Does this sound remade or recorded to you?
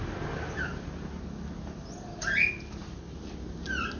recorded